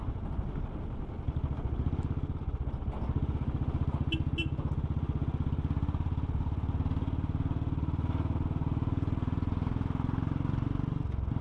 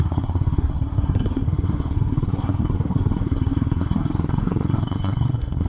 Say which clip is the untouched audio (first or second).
first